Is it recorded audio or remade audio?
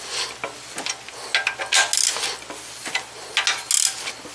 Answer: recorded